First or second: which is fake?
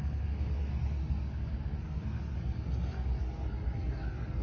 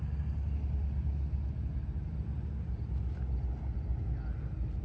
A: first